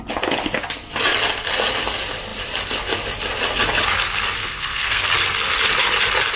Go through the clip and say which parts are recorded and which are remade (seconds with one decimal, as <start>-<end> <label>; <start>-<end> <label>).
0.0-4.4 recorded; 4.4-5.1 remade; 5.1-6.4 recorded